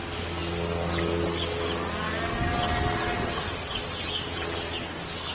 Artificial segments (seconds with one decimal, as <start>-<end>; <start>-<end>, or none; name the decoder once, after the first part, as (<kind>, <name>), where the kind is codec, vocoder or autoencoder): none